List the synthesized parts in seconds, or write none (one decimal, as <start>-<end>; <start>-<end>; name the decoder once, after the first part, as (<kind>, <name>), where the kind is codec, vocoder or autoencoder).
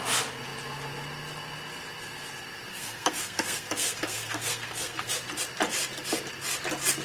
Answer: 2.7-5.1 (codec, SNAC)